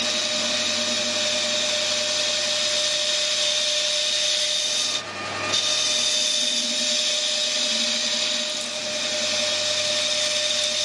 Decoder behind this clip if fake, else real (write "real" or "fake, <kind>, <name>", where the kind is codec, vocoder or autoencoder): real